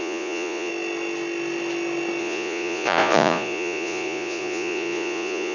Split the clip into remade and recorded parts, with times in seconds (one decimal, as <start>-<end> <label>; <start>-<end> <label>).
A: 0.0-0.7 remade; 0.7-2.2 recorded; 2.2-5.5 remade